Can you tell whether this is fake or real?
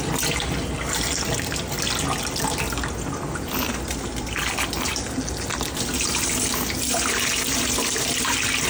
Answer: real